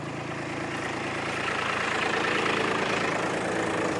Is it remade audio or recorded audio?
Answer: remade